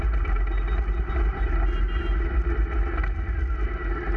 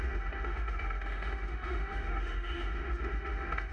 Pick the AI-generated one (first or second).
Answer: second